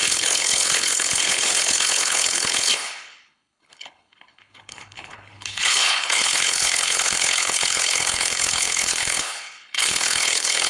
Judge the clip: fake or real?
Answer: fake